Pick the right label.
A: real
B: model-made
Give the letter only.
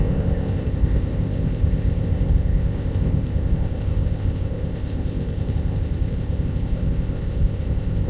B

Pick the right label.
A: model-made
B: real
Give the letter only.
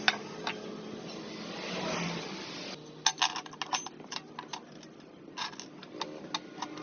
B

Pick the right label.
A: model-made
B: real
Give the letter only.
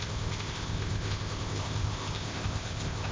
A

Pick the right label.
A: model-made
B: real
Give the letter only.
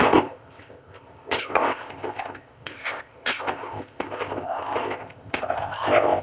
A